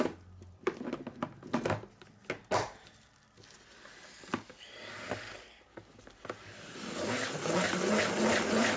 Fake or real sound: real